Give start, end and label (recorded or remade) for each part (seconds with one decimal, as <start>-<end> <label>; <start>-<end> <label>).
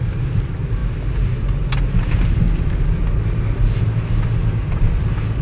0.0-5.4 recorded